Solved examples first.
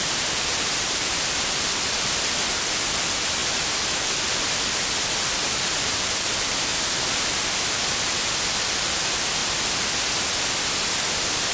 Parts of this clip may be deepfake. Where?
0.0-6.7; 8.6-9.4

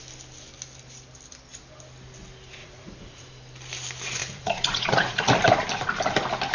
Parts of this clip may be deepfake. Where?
2.6-3.3; 4.2-5.3

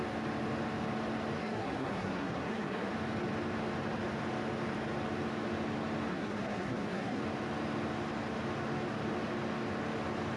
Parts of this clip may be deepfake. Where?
1.4-2.9; 6.1-7.2

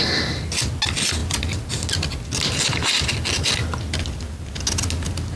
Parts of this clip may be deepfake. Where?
none

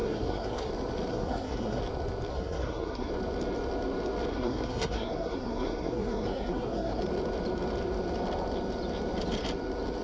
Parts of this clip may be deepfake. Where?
0.0-0.7; 1.1-1.8; 2.3-3.1; 4.3-7.0

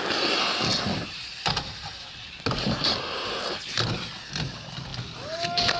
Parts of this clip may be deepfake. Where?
none

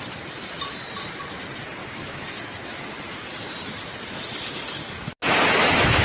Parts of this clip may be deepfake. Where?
1.8-2.4